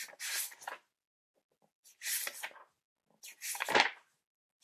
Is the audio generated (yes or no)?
no